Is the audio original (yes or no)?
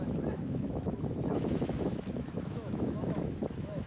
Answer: no